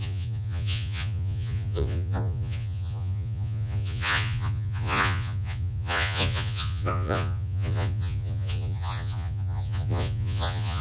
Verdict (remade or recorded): remade